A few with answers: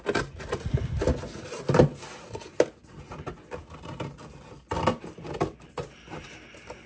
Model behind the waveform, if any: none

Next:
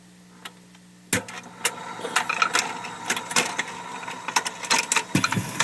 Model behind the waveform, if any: none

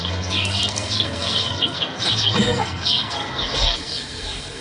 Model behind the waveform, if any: codec, SNAC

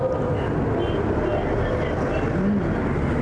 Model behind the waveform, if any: none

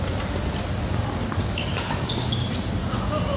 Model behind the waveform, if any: none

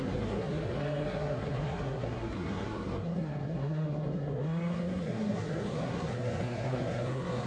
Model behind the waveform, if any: codec, SNAC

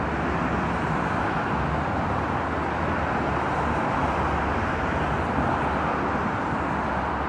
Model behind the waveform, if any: none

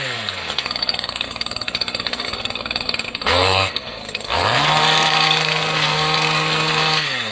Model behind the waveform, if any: codec, SNAC